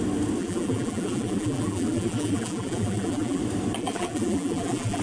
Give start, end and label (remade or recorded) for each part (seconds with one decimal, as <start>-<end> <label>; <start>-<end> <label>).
0.0-0.4 recorded; 0.4-3.4 remade; 3.4-3.8 recorded; 3.8-5.0 remade